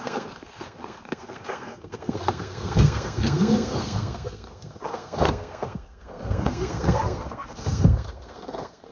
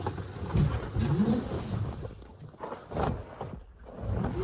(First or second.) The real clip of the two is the second